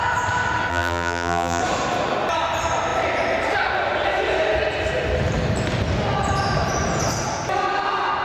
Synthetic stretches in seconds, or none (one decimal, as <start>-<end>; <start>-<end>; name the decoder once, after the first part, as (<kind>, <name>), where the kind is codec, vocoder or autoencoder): 0.7-1.6 (vocoder, BigVGAN v2)